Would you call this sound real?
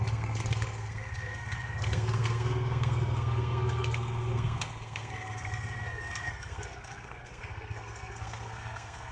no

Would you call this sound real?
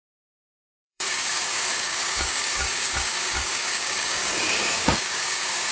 no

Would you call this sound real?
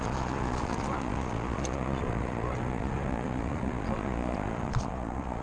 no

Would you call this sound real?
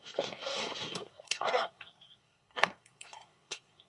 no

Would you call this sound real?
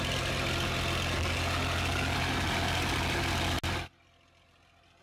yes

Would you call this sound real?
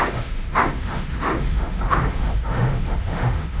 no